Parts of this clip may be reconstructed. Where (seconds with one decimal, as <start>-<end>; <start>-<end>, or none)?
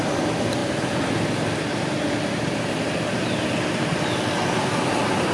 none